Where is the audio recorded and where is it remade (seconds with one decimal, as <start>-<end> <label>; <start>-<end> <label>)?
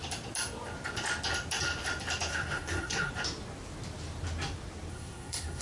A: 0.0-2.3 recorded; 2.3-3.1 remade; 3.1-4.9 recorded; 4.9-5.6 remade